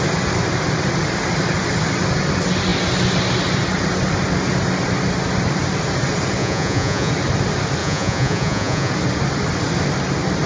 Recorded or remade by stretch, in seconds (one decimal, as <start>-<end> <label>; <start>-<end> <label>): 0.0-6.4 recorded; 6.4-7.1 remade; 7.1-7.8 recorded; 7.8-8.9 remade; 8.9-10.5 recorded